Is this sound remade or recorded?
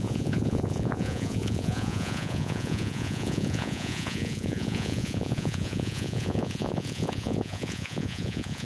remade